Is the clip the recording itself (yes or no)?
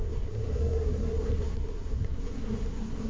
no